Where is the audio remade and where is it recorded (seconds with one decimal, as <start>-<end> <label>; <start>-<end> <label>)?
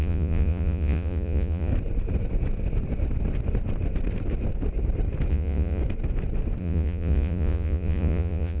0.0-1.7 remade; 1.7-5.3 recorded; 5.3-5.8 remade; 5.8-6.6 recorded; 6.6-8.6 remade